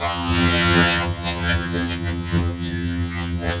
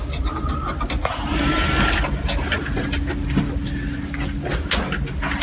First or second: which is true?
second